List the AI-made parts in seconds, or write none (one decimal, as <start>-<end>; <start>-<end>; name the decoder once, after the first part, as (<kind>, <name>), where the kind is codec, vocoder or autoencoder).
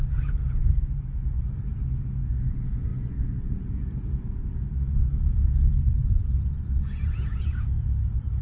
0.0-1.2 (vocoder, Vocos); 1.9-8.4